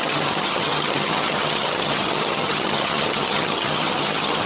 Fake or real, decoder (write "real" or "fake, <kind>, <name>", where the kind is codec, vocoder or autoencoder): fake, vocoder, HiFi-GAN